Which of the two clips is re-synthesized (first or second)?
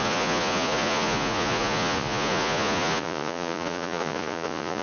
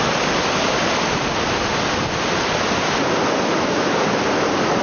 first